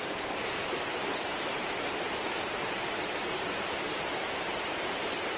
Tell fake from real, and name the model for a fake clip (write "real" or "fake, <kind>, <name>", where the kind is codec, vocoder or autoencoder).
fake, vocoder, BigVGAN v2